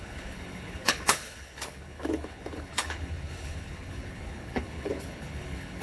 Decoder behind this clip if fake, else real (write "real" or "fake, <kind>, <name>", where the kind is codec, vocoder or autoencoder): fake, codec, HILCodec